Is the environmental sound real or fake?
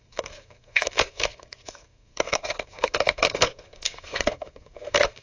fake